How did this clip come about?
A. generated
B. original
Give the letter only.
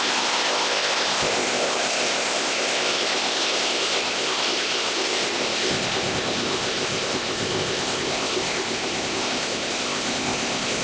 A